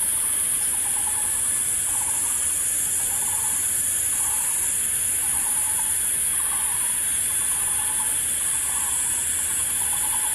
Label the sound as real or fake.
real